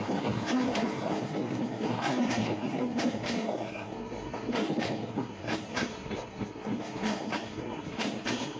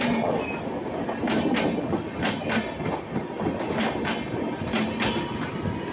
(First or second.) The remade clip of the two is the first